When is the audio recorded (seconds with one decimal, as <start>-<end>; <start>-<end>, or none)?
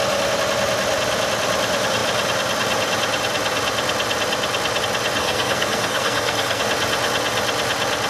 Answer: 0.0-5.2; 6.6-8.1